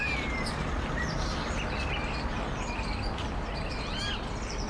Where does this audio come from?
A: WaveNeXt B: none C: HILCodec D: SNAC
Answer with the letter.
B